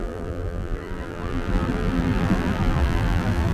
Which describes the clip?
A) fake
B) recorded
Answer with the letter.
A